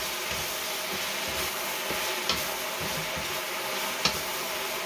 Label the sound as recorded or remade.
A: recorded